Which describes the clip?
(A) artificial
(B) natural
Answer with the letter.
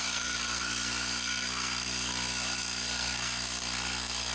A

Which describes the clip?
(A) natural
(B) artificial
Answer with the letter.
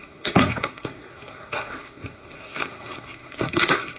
B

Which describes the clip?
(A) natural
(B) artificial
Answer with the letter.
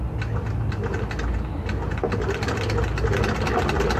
A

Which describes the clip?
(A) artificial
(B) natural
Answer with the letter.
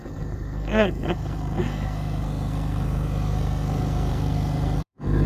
A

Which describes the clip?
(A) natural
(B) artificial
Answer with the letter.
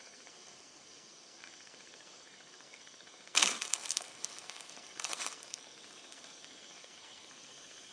B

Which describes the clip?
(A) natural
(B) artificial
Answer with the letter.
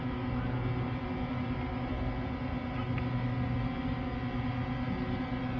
A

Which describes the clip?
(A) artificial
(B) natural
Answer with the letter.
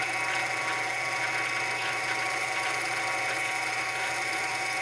B